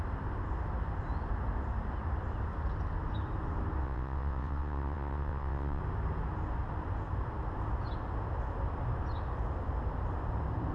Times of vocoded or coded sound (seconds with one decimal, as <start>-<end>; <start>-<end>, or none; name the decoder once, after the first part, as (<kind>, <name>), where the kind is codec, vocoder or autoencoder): 3.8-5.8 (vocoder, WaveNeXt)

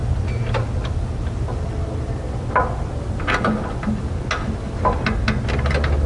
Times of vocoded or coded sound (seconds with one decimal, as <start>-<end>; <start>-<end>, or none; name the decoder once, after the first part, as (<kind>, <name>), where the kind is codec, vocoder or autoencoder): 0.0-1.8 (vocoder, BigVGAN v2)

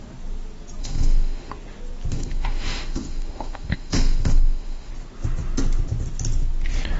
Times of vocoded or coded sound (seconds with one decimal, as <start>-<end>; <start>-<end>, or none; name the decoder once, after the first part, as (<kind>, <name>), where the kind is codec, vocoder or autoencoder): 0.8-1.5 (autoencoder, DAC-VAE); 2.1-4.9